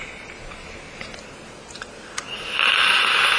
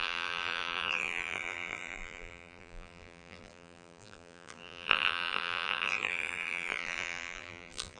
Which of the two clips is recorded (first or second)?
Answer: first